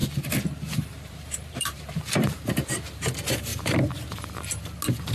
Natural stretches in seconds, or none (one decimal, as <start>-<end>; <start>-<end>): 3.1-3.5; 4.3-5.1